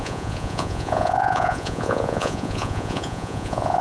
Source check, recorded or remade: remade